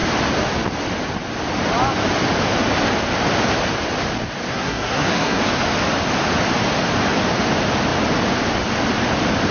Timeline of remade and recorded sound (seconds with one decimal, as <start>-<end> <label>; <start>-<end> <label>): 0.0-4.5 recorded; 4.5-5.4 remade; 5.4-9.5 recorded

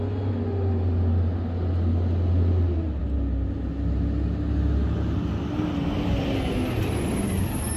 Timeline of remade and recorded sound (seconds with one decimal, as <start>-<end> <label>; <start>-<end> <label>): 0.0-7.8 recorded